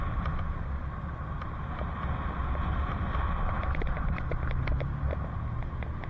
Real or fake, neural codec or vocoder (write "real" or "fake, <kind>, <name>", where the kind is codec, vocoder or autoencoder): real